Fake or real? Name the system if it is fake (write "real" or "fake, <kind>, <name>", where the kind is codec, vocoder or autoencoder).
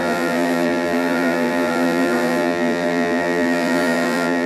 fake, vocoder, BigVGAN v2